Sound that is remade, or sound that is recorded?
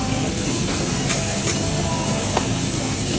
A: remade